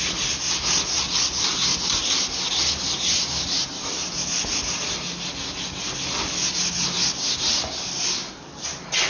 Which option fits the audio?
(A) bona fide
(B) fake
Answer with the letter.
A